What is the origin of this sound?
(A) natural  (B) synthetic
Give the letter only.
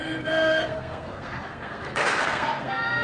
B